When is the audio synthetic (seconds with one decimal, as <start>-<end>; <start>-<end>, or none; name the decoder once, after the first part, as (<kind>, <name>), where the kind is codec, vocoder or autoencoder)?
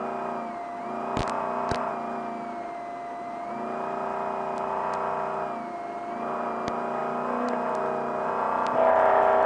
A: none